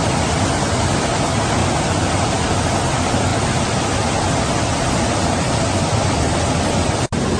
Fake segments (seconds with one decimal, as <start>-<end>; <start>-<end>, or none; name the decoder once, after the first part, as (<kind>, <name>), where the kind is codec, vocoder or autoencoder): 0.0-1.2 (vocoder, BigVGAN v2); 3.3-6.2